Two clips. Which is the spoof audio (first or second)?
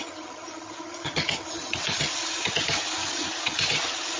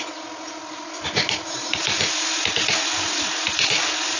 first